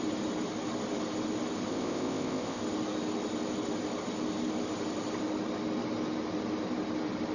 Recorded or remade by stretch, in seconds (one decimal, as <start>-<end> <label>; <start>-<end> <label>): 0.0-1.7 recorded; 1.7-2.6 remade; 2.6-7.3 recorded